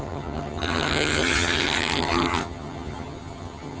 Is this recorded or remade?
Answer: remade